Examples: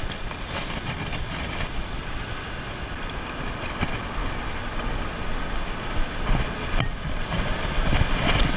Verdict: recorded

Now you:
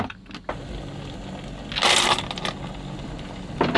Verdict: recorded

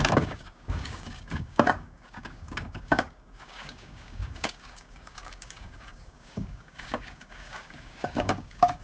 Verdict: remade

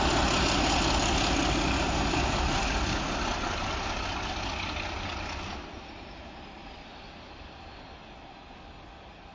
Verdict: recorded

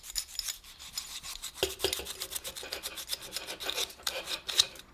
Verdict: recorded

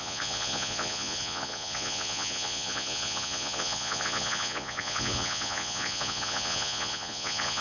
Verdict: remade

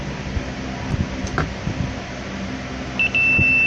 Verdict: recorded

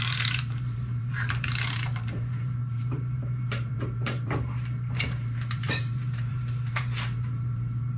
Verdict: remade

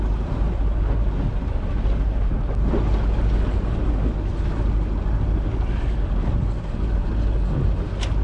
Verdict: recorded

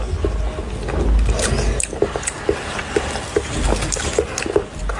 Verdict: recorded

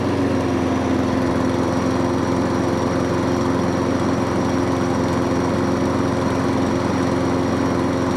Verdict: recorded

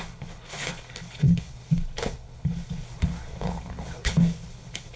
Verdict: remade